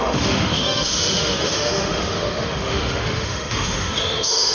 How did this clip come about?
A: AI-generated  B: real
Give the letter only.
A